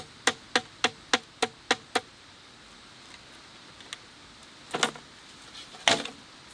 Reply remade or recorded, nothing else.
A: recorded